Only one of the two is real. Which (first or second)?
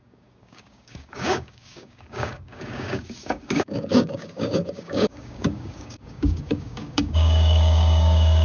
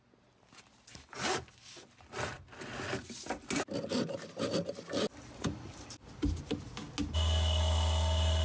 second